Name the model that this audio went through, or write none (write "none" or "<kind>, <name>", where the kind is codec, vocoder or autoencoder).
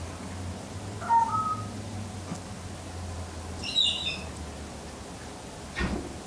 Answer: none